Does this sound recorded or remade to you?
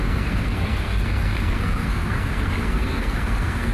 remade